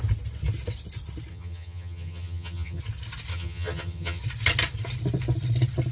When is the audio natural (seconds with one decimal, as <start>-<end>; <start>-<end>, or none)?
0.0-1.3; 2.8-3.3; 4.2-5.9